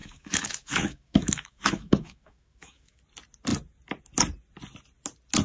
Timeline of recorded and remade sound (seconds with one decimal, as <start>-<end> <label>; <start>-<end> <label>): 0.0-3.0 remade; 3.0-5.4 recorded